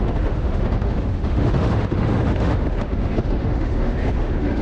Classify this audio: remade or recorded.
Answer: remade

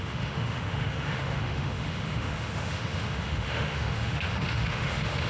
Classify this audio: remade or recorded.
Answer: remade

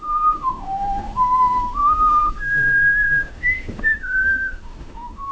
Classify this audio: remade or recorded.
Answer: remade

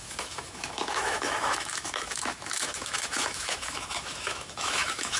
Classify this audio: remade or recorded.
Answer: remade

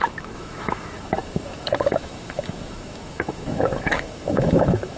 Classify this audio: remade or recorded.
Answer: remade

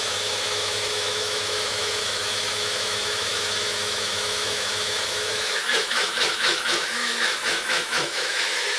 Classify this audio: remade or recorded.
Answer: remade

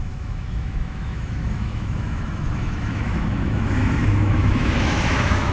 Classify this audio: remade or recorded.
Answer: remade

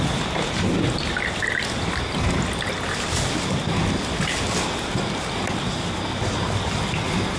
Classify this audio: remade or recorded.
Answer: recorded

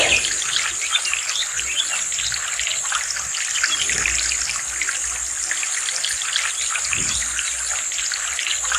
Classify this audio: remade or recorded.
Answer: recorded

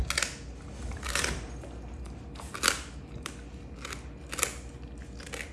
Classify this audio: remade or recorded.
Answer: recorded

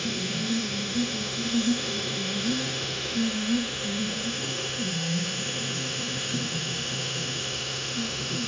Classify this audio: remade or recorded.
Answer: remade